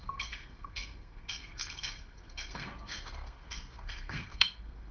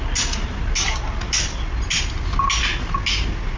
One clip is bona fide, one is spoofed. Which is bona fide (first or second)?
second